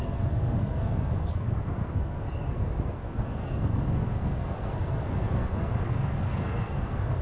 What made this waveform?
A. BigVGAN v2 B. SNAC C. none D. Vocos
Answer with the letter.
B